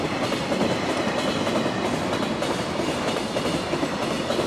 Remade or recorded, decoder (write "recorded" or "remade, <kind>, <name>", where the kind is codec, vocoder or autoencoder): recorded